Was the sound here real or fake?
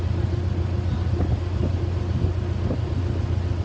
real